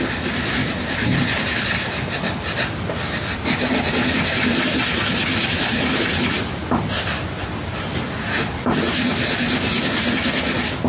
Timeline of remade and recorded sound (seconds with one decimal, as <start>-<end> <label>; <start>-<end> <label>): 0.0-10.9 recorded